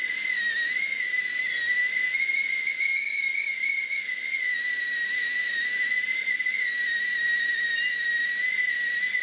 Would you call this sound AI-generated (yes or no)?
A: no